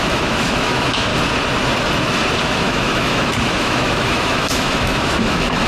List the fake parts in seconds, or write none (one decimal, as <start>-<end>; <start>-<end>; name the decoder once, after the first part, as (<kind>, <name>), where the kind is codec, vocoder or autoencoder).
0.0-1.1 (autoencoder, DAC-VAE); 2.4-5.7